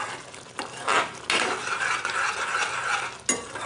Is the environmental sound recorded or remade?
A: recorded